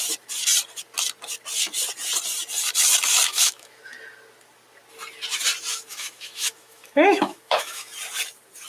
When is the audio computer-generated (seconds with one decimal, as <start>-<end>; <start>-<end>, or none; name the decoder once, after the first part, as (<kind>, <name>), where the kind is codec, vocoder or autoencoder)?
3.3-3.8 (autoencoder, DAC-VAE); 5.9-7.9